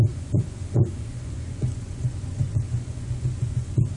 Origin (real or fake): fake